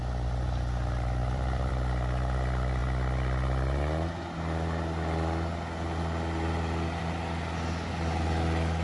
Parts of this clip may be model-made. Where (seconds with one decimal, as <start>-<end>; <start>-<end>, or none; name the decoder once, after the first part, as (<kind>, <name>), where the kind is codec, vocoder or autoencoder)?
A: 1.2-1.7 (vocoder, BigVGAN v2)